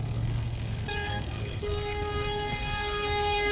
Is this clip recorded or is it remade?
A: remade